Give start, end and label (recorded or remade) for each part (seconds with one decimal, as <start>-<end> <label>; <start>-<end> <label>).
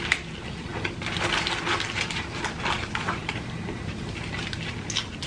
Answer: 0.0-5.3 recorded